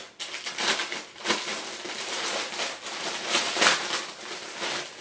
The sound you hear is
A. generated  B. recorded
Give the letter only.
B